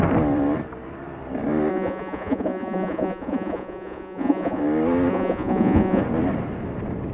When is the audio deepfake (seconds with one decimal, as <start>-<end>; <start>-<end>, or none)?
1.7-4.6; 5.1-6.0